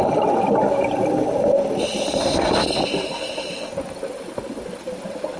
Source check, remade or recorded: recorded